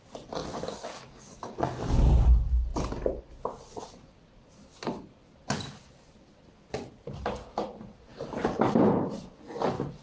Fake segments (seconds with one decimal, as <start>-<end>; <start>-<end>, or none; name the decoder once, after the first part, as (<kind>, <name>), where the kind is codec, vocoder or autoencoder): 0.4-1.6 (codec, DAC)